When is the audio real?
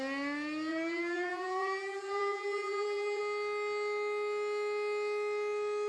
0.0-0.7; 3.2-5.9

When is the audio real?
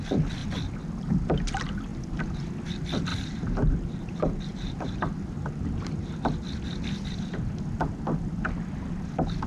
0.0-3.1; 6.2-9.5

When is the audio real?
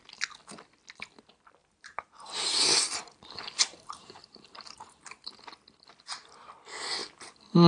0.0-1.6; 5.4-7.7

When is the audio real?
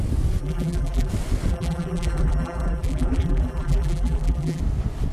0.0-0.4; 1.1-1.5; 4.6-5.1